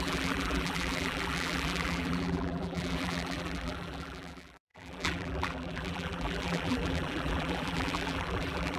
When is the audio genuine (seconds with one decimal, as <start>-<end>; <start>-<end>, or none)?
none